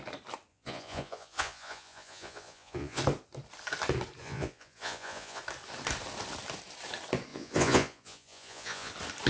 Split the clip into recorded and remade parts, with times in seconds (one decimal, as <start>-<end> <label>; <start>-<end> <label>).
0.0-0.5 recorded; 0.5-3.0 remade; 3.0-4.2 recorded; 4.2-5.4 remade; 5.4-7.3 recorded; 7.3-8.9 remade; 8.9-9.3 recorded